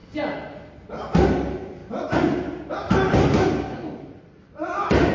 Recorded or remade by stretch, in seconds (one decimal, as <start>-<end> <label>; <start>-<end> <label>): 0.0-0.9 recorded; 0.9-5.1 remade